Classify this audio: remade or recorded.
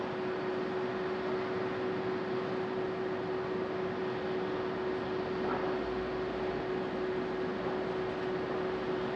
recorded